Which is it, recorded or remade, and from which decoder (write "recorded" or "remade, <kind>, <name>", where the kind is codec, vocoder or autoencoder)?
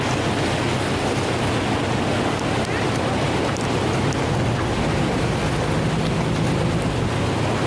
recorded